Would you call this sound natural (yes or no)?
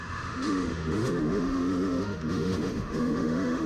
no